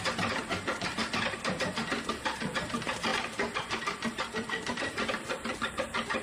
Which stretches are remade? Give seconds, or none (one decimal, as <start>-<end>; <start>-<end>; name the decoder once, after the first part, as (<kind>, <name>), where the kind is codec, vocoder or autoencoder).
0.0-1.0 (vocoder, BigVGAN v2); 2.1-6.2